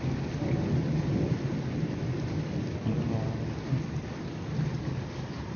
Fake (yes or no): no